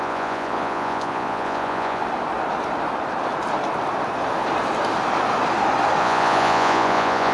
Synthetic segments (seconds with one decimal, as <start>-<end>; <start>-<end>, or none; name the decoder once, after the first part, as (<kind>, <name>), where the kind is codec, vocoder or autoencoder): 0.0-2.0 (vocoder, Vocos); 6.0-7.3

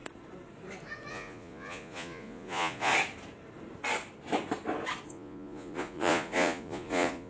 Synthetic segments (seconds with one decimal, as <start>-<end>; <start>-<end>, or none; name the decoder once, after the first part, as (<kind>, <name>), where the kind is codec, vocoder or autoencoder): 1.1-2.9 (vocoder, Vocos); 5.1-7.3

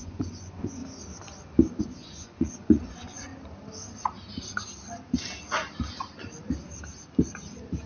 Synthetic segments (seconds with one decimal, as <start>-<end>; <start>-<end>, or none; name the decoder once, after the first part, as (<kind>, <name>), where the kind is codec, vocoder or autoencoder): 0.0-0.8 (vocoder, Vocos); 1.8-3.3